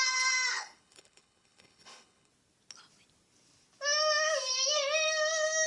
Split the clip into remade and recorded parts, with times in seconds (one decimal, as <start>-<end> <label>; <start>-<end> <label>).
0.0-0.5 recorded; 0.5-2.3 remade; 2.3-5.7 recorded